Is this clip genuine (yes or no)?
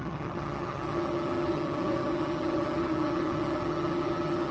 no